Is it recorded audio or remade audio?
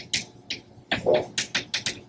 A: recorded